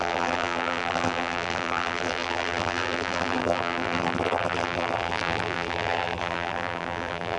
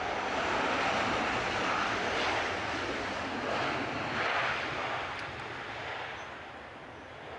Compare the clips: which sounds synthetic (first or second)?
first